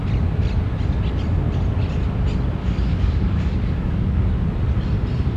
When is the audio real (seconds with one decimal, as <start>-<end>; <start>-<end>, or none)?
0.0-2.6; 4.3-5.4